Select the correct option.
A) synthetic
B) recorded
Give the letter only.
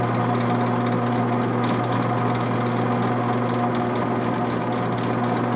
B